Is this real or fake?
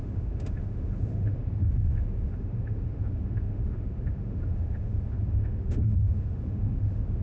fake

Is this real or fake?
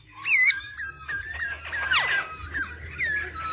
real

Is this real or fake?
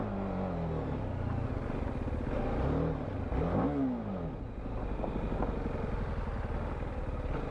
real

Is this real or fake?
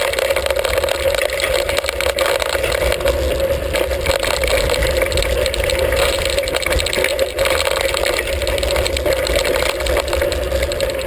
real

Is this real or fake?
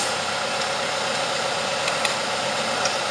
real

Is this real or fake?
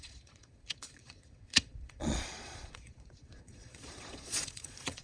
fake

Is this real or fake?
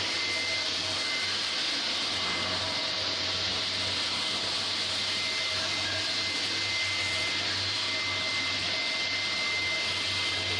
real